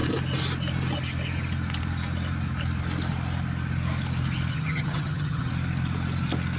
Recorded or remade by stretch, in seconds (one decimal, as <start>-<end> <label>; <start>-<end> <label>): 0.0-4.5 recorded; 4.5-5.5 remade; 5.5-6.6 recorded